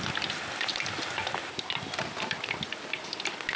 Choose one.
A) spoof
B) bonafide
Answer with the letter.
B